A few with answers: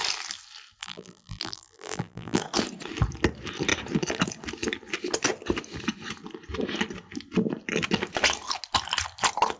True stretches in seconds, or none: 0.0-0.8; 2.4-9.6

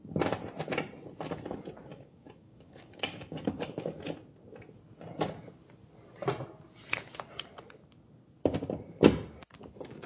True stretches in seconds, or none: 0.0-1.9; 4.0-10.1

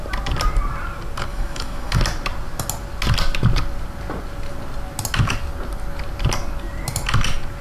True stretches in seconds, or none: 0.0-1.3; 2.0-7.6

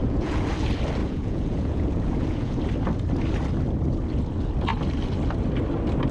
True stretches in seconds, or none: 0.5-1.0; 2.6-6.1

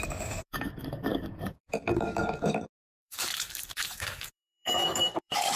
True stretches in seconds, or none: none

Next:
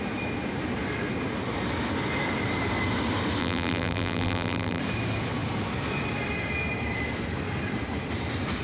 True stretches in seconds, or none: 0.0-3.4; 4.8-8.6

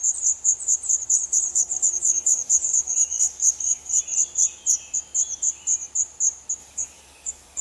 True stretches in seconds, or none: 0.0-1.5; 4.0-6.6